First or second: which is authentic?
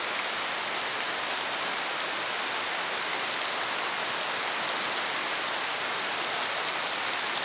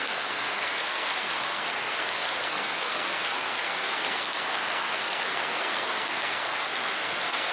first